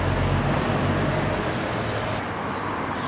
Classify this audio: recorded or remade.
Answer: recorded